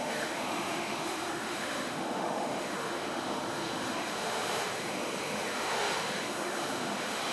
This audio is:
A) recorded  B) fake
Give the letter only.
B